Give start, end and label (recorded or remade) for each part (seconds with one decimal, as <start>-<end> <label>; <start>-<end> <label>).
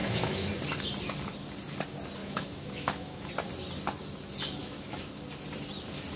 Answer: 0.0-0.5 remade; 0.5-2.2 recorded; 2.2-3.3 remade; 3.3-4.6 recorded; 4.6-5.2 remade; 5.2-6.2 recorded